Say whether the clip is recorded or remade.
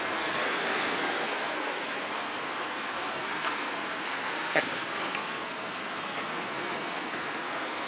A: remade